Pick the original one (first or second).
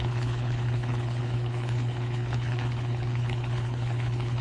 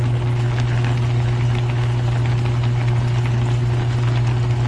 second